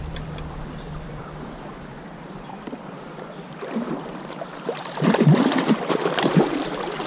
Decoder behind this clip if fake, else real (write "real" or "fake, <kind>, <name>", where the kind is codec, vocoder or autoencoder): fake, vocoder, BigVGAN v2